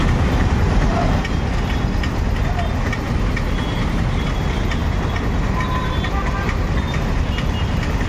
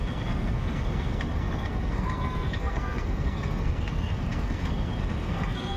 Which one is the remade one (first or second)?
second